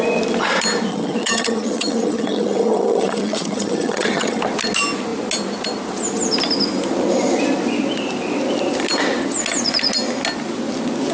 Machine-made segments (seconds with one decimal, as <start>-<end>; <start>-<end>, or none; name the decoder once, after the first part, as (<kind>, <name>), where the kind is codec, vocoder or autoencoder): 0.9-4.4 (vocoder, HiFi-GAN)